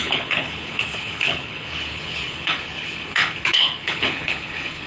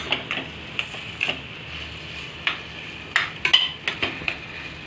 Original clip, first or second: second